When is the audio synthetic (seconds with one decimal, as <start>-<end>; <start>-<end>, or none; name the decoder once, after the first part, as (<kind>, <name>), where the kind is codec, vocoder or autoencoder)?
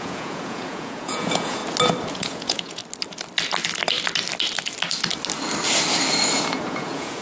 0.0-1.6 (vocoder, Vocos); 2.1-2.8; 6.5-7.2